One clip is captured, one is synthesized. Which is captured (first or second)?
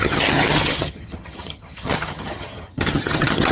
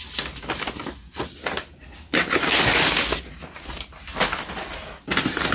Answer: second